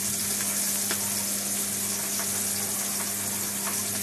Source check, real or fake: real